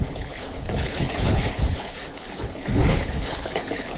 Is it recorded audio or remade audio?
remade